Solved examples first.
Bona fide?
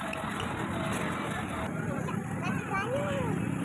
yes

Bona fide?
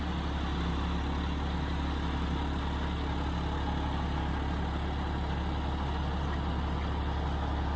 yes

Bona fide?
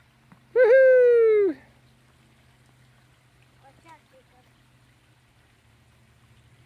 yes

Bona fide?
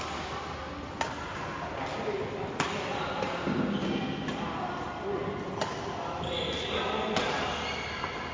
yes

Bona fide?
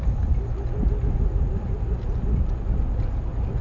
yes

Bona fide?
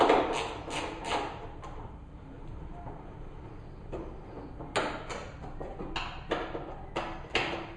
yes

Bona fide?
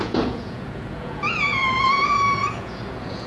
no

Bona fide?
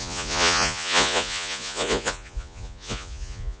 no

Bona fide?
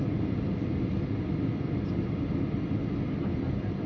yes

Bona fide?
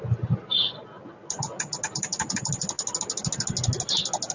yes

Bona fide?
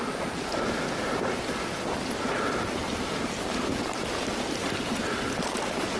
yes